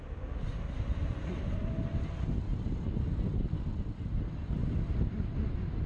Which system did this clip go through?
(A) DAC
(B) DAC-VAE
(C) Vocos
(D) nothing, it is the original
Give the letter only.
D